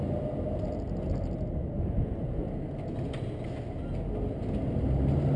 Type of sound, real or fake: real